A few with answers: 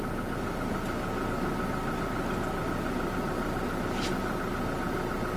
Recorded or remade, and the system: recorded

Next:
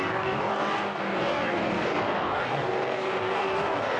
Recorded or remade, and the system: remade, codec, DAC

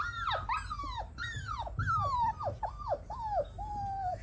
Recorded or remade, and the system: recorded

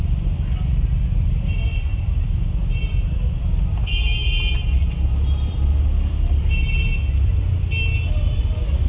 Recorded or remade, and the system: recorded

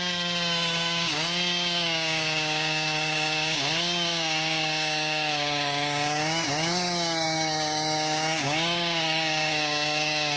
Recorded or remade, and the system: remade, codec, DAC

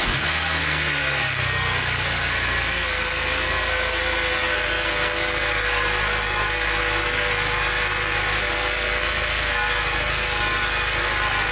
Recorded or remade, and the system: remade, codec, SNAC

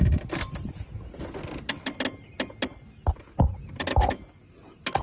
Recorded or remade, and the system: recorded